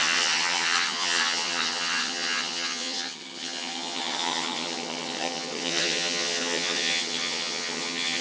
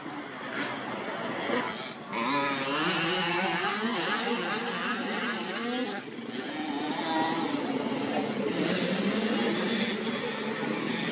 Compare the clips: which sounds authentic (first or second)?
second